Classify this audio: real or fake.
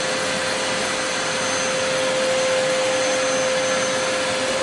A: real